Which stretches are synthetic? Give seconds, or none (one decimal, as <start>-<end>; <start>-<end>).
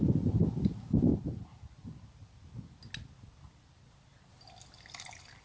none